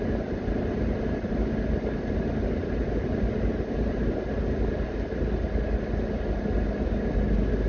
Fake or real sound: real